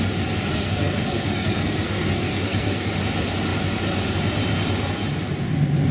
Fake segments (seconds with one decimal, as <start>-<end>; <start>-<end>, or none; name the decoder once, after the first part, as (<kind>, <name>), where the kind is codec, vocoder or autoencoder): 0.5-2.9 (codec, SNAC)